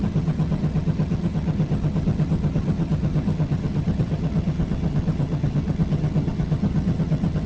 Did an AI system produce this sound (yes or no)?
yes